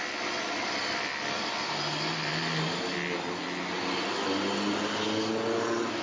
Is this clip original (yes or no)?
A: yes